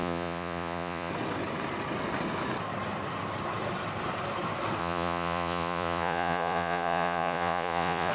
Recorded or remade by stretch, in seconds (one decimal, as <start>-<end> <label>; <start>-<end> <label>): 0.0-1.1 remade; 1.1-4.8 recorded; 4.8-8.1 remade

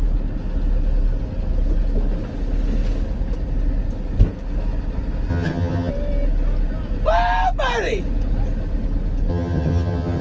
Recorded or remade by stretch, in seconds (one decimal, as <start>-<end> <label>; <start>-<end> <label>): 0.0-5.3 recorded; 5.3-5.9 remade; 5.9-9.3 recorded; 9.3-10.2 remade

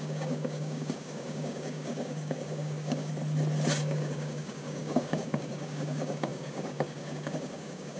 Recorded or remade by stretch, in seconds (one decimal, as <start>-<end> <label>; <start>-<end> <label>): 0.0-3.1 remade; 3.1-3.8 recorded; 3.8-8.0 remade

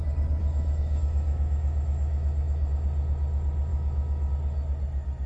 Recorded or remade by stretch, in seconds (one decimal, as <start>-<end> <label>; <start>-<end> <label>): 0.0-0.4 recorded; 0.4-2.7 remade; 2.7-3.7 recorded; 3.7-4.3 remade; 4.3-5.3 recorded

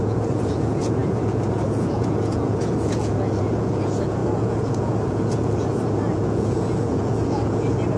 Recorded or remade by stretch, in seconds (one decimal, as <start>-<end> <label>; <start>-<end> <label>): 0.0-8.0 remade